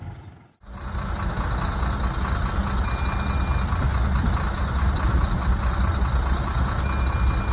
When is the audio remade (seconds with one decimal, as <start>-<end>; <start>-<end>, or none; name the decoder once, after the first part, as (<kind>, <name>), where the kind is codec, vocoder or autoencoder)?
none